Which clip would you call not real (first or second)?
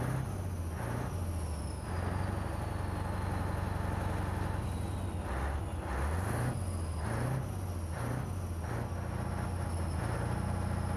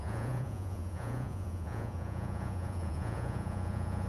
second